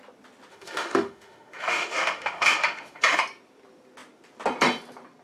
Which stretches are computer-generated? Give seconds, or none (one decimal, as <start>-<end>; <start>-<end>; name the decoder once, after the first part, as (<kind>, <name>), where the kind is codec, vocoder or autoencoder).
0.5-3.2 (autoencoder, DAC-VAE)